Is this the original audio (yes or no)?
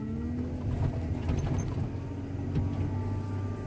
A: yes